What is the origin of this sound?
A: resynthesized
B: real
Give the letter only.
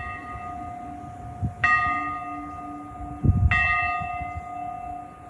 B